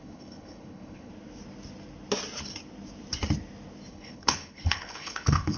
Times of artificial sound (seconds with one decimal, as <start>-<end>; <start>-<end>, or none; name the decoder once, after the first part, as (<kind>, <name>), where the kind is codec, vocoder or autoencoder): 0.0-1.1 (codec, HILCodec); 3.9-5.6